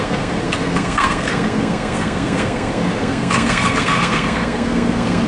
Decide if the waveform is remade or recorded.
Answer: remade